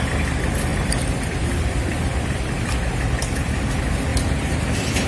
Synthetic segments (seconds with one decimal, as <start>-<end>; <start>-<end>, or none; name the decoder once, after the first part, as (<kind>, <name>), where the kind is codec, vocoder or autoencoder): 0.7-2.5 (vocoder, BigVGAN v2)